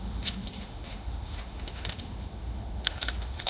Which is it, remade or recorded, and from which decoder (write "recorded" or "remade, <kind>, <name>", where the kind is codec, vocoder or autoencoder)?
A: remade, autoencoder, DAC-VAE